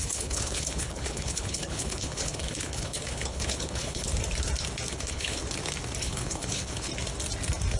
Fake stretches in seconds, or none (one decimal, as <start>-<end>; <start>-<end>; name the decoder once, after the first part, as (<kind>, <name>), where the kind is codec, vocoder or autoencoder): 0.0-4.1 (codec, HILCodec); 4.9-5.4; 6.0-6.9